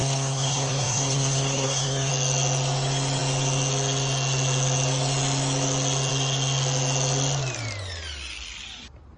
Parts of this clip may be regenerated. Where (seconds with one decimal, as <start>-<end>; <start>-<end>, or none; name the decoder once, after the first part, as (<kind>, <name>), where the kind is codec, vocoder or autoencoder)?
0.0-2.1 (codec, SNAC)